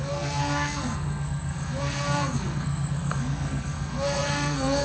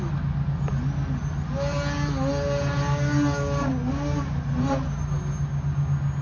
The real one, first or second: second